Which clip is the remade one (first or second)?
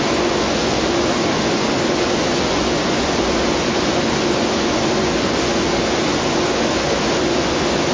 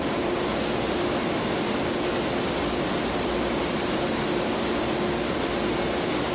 first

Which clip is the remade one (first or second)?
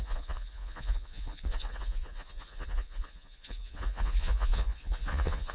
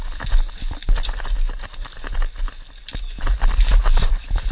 first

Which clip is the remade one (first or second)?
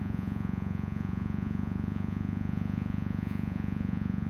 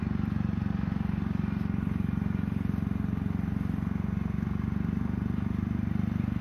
first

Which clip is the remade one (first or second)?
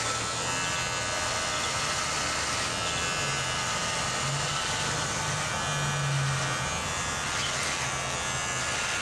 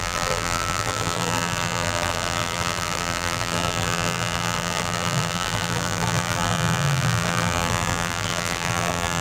second